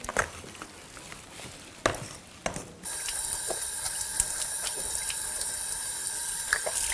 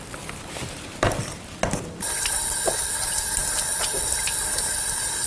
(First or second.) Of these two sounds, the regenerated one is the second